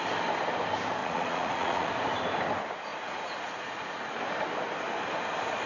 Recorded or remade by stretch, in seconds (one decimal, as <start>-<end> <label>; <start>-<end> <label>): 0.0-1.0 recorded; 1.0-1.9 remade; 1.9-2.9 recorded; 2.9-4.1 remade; 4.1-5.7 recorded